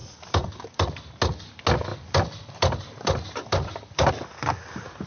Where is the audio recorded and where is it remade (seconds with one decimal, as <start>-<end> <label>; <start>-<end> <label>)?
0.0-1.2 remade; 1.2-1.9 recorded; 1.9-4.1 remade; 4.1-5.1 recorded